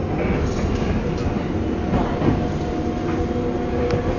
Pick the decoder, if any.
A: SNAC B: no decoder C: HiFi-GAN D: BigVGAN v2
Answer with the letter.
B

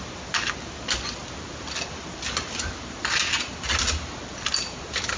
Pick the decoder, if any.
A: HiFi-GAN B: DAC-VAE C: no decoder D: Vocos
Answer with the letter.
C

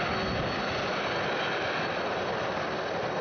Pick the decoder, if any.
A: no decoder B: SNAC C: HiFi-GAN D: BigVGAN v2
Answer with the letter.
A